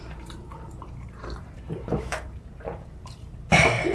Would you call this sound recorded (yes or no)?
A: no